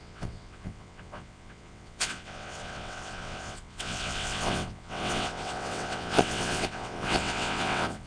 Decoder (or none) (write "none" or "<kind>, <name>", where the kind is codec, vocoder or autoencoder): vocoder, WaveNeXt